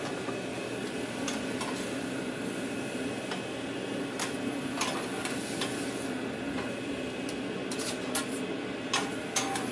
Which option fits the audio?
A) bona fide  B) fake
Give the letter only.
A